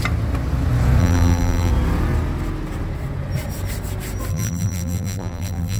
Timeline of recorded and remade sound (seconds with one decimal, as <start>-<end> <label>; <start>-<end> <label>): 0.0-1.0 recorded; 1.0-1.7 remade; 1.7-4.3 recorded; 4.3-5.8 remade